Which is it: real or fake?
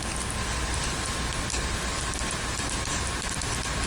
real